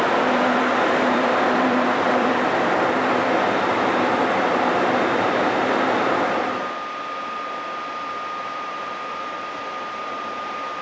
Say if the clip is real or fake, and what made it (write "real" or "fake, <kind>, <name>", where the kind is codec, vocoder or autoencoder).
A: fake, vocoder, BigVGAN v2